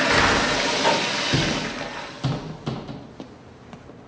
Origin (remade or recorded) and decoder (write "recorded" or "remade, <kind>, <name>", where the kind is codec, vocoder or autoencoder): recorded